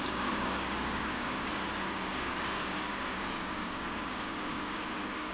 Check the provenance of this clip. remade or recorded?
remade